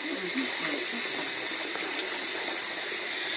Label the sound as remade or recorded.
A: recorded